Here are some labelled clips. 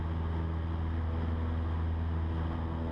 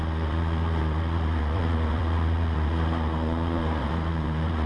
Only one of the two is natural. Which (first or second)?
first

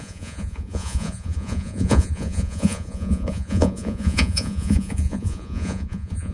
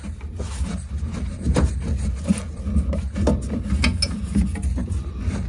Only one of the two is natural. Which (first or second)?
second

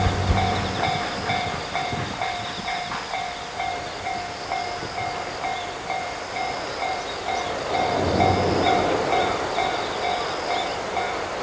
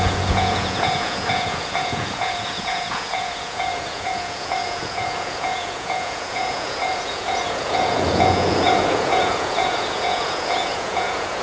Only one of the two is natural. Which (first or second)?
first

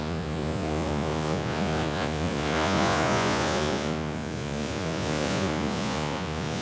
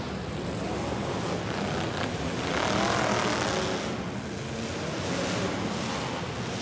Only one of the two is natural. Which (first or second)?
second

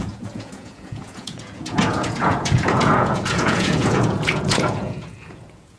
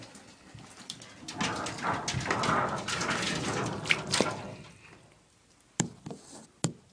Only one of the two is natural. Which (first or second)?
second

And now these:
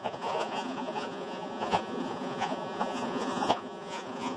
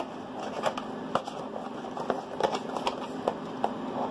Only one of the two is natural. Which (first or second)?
second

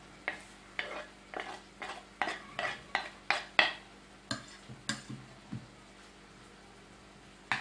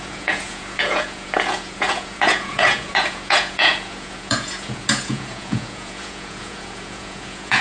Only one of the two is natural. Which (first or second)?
first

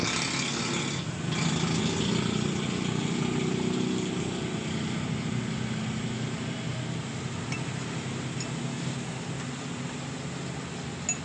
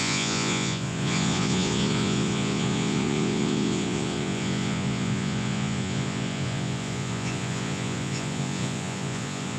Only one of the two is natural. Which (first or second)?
first